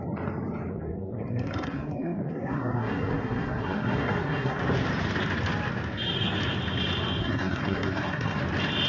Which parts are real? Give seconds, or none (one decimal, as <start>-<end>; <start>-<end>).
0.0-0.7; 4.6-7.2; 8.4-8.9